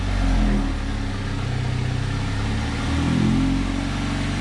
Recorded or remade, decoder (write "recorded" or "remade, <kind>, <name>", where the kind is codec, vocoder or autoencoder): recorded